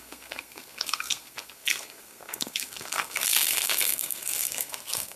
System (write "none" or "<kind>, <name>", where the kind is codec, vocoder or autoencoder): codec, SNAC